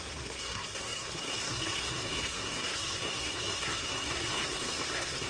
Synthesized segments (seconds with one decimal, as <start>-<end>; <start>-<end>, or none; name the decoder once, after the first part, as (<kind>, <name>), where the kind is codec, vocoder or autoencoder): 0.0-5.3 (codec, SNAC)